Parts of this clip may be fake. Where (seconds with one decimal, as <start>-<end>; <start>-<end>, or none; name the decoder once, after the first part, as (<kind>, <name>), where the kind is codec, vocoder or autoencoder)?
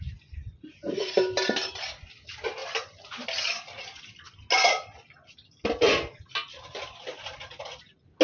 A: none